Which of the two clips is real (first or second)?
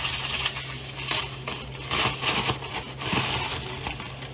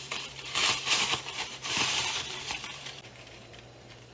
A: first